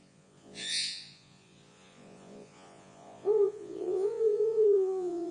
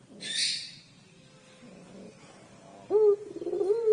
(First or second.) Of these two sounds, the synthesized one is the first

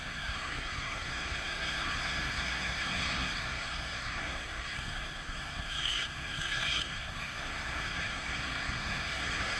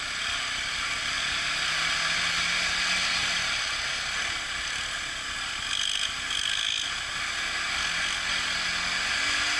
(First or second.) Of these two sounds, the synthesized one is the first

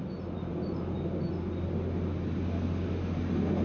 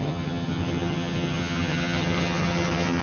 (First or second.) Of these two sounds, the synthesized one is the second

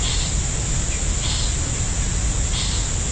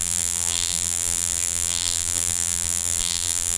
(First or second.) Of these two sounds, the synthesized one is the second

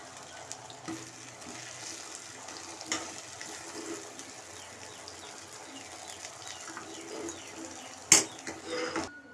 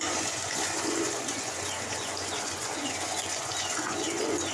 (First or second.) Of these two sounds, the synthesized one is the second